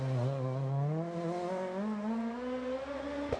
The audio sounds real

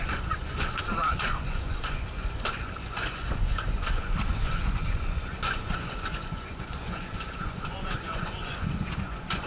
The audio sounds fake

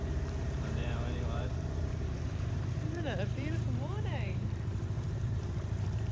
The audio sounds fake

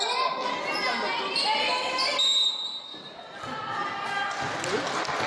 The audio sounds real